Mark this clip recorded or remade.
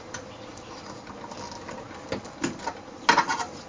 recorded